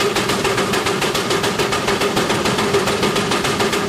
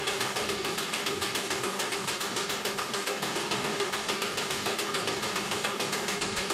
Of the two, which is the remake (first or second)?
second